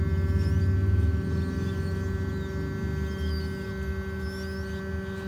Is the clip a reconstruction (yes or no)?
no